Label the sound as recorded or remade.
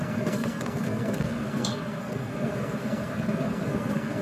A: remade